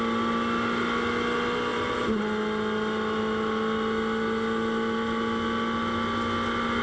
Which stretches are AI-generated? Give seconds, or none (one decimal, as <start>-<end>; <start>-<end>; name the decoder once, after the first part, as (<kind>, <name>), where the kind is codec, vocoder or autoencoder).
1.7-2.2 (vocoder, BigVGAN v2)